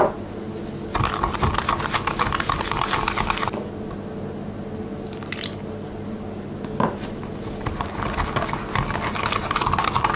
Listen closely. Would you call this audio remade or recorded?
recorded